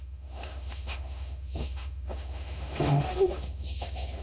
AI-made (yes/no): yes